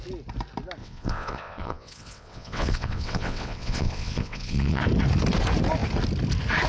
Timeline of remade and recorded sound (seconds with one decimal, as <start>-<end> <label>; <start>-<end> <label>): 0.0-0.8 recorded; 0.8-4.8 remade; 4.8-6.7 recorded